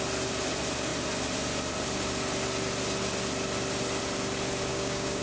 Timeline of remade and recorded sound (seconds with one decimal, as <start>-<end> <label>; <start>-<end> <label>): 0.0-4.7 recorded; 4.7-5.2 remade